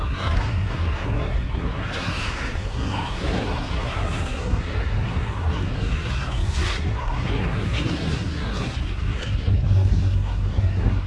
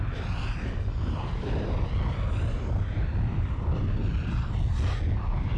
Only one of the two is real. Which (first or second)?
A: second